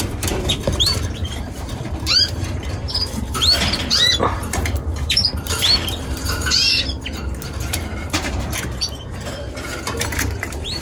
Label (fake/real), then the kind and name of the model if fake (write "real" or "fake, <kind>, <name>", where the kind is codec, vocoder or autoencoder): fake, vocoder, BigVGAN v2